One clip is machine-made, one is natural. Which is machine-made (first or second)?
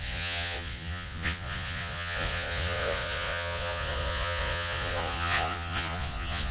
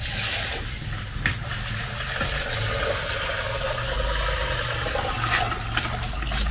first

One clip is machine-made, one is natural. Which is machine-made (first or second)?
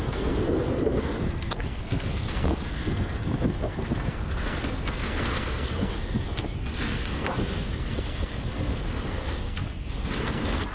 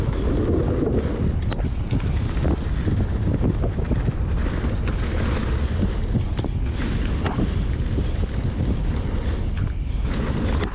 first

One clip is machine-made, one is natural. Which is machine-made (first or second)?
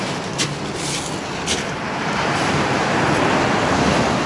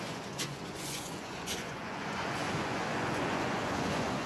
second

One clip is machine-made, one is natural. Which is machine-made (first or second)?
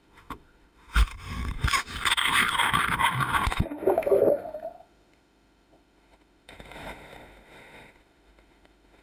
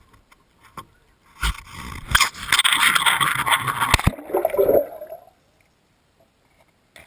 first